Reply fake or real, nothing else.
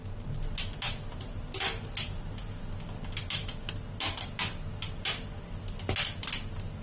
real